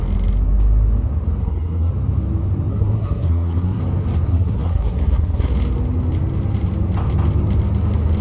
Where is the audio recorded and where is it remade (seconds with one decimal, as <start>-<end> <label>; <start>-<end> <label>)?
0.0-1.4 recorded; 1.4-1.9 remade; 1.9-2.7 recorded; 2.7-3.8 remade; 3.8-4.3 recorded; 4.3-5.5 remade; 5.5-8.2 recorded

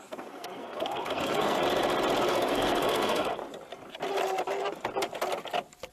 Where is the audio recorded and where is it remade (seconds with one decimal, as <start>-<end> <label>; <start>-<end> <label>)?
0.0-1.6 remade; 1.6-2.2 recorded; 2.2-3.4 remade; 3.4-5.9 recorded

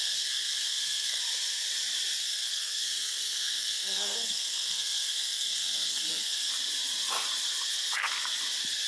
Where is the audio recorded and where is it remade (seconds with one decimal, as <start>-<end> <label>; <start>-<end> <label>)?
0.0-1.2 remade; 1.2-2.2 recorded; 2.2-6.5 remade; 6.5-8.9 recorded